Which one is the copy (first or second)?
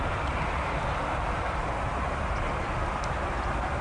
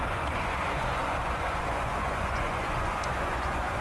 second